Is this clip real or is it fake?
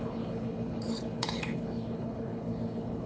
fake